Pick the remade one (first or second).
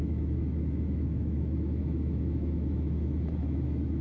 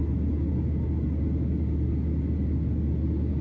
first